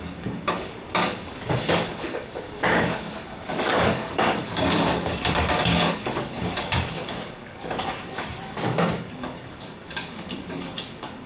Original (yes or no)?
no